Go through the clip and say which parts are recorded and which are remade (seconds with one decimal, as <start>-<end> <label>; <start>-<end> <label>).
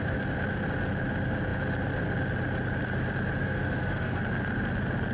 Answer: 0.0-3.4 recorded; 3.4-4.2 remade; 4.2-5.1 recorded